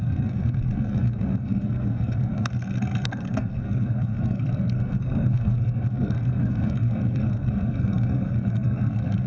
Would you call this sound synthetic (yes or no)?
yes